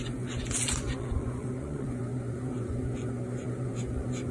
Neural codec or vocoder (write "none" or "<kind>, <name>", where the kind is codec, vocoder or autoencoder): vocoder, Vocos